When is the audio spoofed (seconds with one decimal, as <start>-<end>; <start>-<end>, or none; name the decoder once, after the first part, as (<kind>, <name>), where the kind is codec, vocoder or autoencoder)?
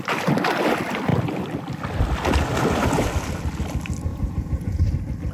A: 4.1-4.8 (vocoder, Vocos)